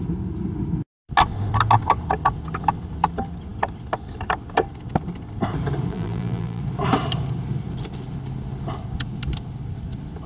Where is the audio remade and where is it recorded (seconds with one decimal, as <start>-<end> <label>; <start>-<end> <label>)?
0.0-5.9 recorded; 5.9-6.6 remade; 6.6-10.3 recorded